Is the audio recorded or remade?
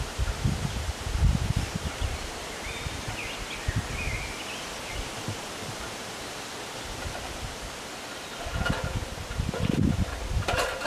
recorded